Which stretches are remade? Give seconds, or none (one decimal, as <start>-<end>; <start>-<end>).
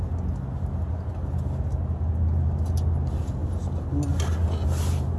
none